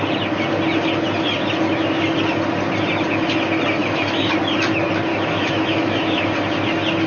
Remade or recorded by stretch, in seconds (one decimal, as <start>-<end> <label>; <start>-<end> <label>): 0.0-3.8 recorded; 3.8-4.3 remade; 4.3-5.1 recorded; 5.1-6.2 remade; 6.2-7.1 recorded